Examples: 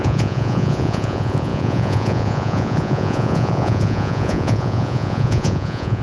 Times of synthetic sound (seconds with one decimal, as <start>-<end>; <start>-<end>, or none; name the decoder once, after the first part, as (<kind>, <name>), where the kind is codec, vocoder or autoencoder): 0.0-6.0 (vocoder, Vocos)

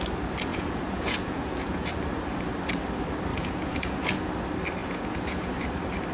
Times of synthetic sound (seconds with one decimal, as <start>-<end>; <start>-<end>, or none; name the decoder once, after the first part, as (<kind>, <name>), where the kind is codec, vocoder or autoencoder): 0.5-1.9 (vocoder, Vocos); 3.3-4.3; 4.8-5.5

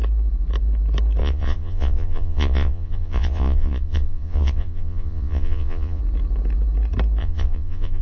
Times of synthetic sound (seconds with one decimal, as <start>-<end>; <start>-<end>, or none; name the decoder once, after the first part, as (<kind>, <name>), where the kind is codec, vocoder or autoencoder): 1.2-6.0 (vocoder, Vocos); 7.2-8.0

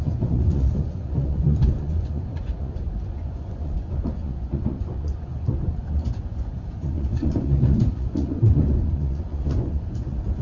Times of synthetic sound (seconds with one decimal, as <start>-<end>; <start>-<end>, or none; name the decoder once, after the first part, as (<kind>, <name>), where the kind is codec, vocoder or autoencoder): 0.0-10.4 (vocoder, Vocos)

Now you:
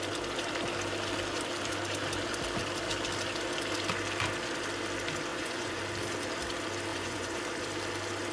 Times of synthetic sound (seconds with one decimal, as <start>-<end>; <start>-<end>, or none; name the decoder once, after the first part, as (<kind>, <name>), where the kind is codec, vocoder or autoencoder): 5.3-5.8 (vocoder, Vocos); 6.9-7.4

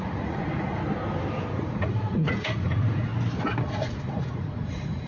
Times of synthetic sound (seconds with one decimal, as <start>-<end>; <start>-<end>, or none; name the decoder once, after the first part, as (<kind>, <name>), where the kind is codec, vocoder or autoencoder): 0.0-0.8 (vocoder, Vocos); 1.5-3.1; 3.6-5.1

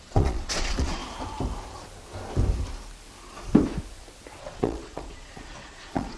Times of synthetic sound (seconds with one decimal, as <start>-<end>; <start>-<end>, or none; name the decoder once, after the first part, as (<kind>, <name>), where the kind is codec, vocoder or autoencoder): 0.0-1.0 (vocoder, Vocos); 4.4-6.2

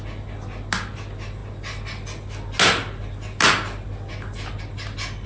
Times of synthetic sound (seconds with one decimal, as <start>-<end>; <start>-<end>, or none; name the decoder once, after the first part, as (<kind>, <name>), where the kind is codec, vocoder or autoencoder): none